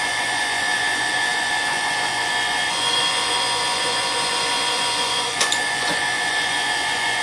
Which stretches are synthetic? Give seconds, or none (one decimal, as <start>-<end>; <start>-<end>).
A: 0.0-7.2